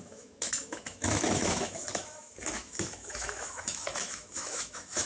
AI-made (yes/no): yes